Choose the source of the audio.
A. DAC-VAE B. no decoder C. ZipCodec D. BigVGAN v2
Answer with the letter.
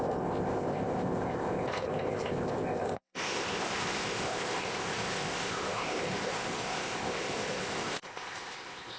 C